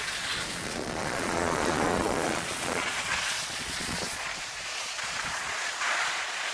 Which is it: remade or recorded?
remade